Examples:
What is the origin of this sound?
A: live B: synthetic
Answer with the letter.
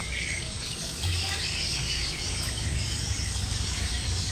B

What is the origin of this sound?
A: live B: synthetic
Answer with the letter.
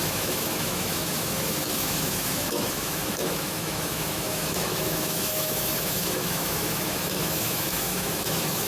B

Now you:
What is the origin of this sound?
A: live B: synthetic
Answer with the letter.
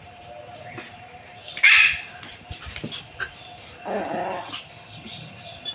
A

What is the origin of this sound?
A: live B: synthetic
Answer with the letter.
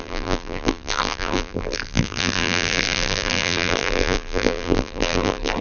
B